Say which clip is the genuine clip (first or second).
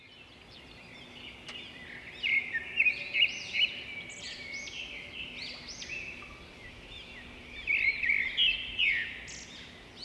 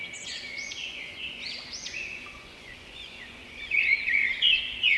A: first